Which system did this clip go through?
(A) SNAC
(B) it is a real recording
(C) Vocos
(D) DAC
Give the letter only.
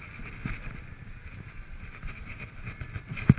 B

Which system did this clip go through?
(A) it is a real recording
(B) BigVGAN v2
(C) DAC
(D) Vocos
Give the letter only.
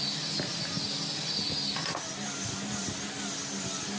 A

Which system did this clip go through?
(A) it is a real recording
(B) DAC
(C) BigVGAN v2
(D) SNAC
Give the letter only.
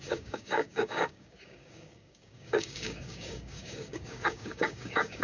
B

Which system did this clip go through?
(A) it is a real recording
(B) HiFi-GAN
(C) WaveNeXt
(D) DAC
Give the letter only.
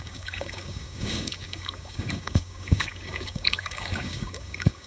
D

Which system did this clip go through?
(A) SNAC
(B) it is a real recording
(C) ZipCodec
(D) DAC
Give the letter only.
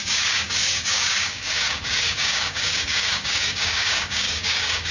D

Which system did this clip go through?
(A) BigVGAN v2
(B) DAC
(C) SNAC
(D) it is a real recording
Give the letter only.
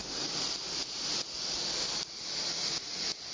D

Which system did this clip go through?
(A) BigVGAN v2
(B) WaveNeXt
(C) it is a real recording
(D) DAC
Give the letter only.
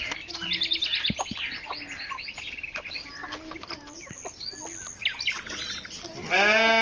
C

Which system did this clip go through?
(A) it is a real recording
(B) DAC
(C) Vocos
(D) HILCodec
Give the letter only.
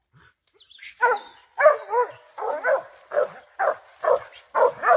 A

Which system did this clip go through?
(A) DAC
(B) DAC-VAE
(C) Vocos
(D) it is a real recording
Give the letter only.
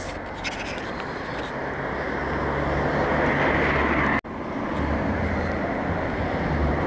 D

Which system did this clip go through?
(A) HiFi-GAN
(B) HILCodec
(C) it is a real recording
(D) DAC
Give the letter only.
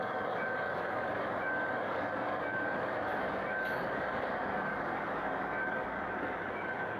D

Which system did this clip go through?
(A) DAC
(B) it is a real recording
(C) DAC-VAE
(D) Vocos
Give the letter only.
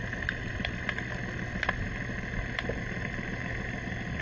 B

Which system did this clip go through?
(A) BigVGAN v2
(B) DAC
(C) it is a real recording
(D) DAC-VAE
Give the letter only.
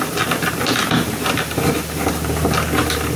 C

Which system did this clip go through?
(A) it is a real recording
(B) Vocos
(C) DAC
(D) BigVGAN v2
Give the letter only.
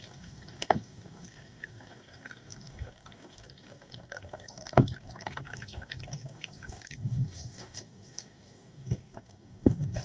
C